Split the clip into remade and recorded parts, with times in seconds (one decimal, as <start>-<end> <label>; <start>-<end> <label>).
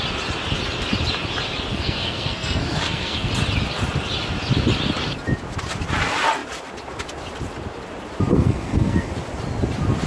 0.0-1.7 recorded; 1.7-3.3 remade; 3.3-8.3 recorded; 8.3-9.1 remade; 9.1-10.1 recorded